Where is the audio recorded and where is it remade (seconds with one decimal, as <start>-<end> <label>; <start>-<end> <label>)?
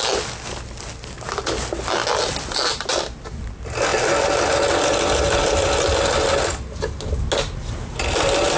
0.0-8.6 recorded